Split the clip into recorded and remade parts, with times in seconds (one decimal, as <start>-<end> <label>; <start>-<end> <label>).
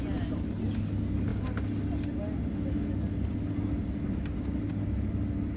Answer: 0.0-5.6 recorded